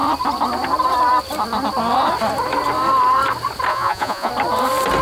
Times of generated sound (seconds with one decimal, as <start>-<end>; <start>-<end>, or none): 3.7-4.3